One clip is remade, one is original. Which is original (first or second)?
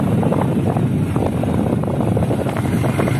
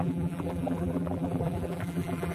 first